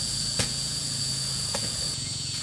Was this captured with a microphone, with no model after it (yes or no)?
no